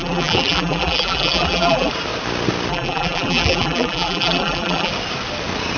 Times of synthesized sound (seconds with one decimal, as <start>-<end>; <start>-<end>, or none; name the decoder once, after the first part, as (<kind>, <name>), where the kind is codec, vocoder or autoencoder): 0.0-1.9 (vocoder, BigVGAN v2); 2.7-4.9